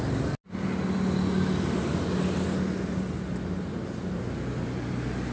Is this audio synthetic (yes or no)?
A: no